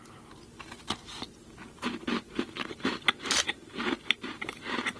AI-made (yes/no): yes